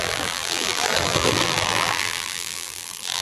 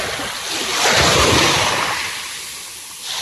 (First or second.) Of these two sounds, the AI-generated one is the first